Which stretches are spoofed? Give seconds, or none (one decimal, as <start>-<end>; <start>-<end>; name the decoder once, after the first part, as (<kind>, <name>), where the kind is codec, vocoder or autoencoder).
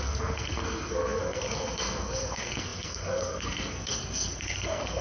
0.0-5.0 (codec, SNAC)